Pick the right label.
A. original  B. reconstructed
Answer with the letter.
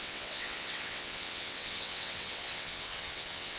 B